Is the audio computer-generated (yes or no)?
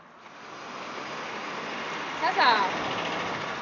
no